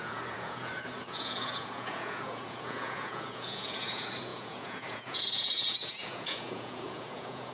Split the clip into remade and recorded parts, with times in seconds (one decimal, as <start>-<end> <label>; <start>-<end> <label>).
0.0-7.5 remade